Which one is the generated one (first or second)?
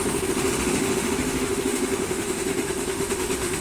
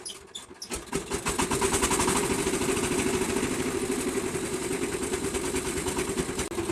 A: first